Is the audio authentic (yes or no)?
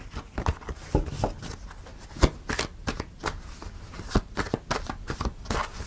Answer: yes